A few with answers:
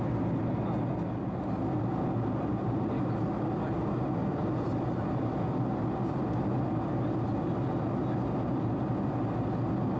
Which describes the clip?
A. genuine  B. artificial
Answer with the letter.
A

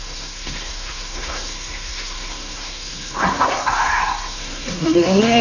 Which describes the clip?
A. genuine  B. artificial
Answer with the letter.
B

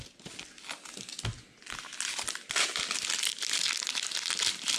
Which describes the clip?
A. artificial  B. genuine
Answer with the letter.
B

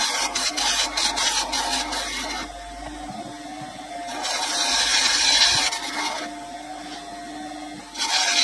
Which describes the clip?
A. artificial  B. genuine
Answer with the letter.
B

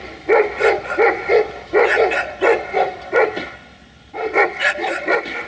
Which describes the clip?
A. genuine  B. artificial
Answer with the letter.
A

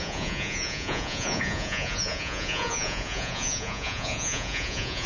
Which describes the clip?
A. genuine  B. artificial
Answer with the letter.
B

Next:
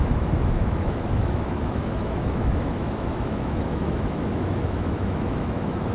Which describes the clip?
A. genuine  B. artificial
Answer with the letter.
B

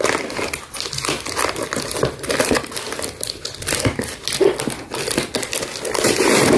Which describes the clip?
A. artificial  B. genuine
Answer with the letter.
B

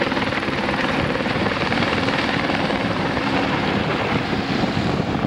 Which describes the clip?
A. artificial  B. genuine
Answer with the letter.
A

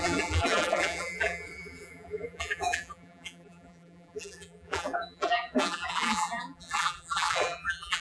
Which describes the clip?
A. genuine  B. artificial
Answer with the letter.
B